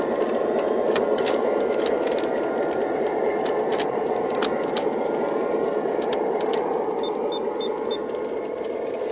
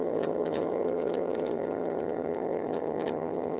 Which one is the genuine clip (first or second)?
first